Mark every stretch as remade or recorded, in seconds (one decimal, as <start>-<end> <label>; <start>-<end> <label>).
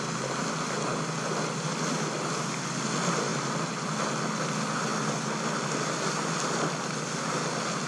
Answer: 0.0-7.9 recorded